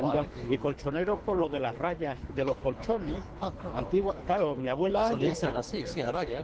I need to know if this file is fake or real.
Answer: fake